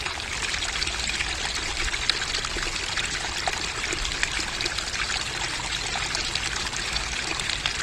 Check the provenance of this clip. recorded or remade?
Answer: recorded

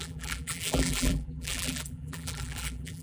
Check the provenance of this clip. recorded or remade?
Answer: remade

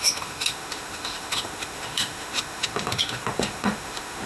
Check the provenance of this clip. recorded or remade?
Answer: remade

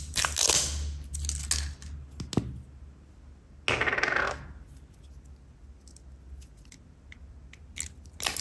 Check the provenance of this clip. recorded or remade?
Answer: recorded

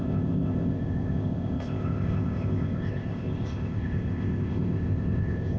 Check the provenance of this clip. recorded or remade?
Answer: remade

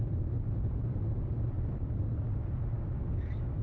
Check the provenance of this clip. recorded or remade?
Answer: recorded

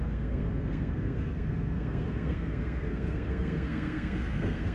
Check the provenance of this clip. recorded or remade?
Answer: remade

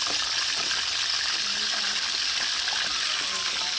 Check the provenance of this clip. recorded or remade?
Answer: recorded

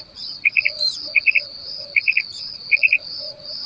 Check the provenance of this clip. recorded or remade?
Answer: remade